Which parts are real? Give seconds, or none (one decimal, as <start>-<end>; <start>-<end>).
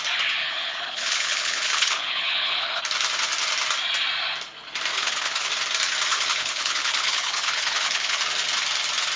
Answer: 0.0-0.4; 2.8-4.9; 5.5-6.1; 8.2-9.2